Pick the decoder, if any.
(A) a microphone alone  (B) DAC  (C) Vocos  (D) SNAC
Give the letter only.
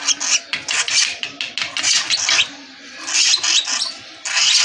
A